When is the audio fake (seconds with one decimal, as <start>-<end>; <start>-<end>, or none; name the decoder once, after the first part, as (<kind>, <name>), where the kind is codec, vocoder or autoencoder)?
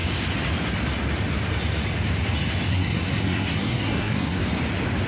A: 2.7-4.4 (codec, SNAC)